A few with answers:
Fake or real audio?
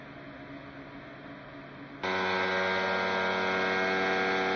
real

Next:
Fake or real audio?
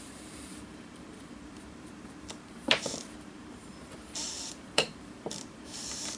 fake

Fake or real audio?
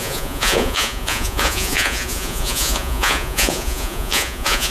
fake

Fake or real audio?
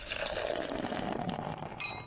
real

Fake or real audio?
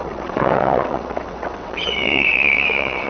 fake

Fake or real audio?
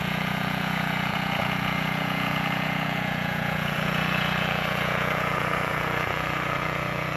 fake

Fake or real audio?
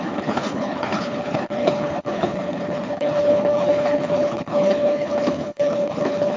fake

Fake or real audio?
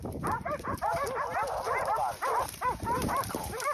fake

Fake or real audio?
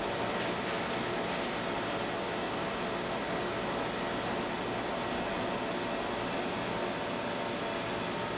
real